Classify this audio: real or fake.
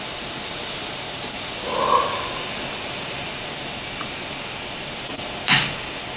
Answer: real